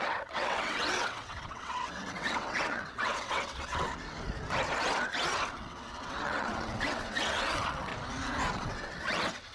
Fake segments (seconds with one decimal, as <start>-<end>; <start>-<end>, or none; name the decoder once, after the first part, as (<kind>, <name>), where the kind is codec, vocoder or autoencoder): 0.0-3.9 (vocoder, WaveNeXt); 5.5-7.9; 8.5-9.5

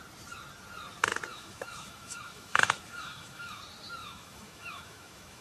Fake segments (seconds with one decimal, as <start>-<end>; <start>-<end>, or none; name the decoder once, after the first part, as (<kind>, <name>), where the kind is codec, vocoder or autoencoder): 1.3-3.6 (autoencoder, DAC-VAE); 4.0-5.4

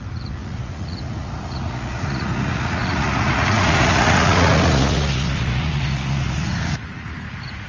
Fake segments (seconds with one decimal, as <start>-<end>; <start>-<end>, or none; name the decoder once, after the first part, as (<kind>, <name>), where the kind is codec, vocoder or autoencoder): 0.0-7.7 (vocoder, Vocos)

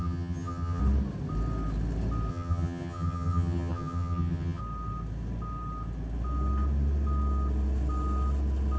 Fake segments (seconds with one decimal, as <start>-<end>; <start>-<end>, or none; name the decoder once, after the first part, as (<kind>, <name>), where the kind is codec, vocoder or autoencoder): 0.0-0.8 (vocoder, HiFi-GAN); 2.3-4.6

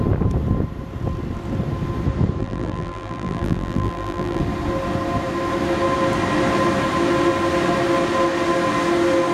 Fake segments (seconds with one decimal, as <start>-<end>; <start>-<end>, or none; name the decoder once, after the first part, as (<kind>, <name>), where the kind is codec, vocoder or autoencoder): 2.4-4.4 (vocoder, BigVGAN v2)

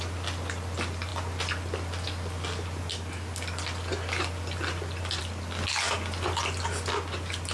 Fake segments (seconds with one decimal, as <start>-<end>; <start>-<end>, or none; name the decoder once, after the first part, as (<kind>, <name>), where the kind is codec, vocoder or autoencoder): none

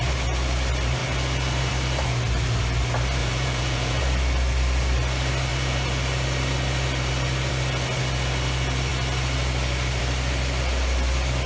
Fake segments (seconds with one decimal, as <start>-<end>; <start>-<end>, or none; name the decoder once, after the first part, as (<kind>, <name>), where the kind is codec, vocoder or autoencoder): 3.2-4.0 (vocoder, Vocos)